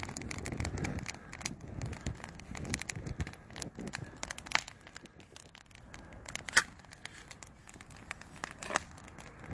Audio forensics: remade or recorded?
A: recorded